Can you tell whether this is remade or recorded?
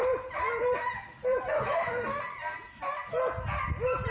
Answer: recorded